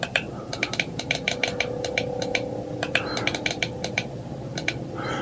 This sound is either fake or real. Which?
fake